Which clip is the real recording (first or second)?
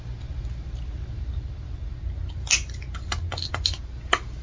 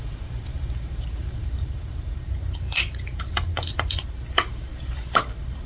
first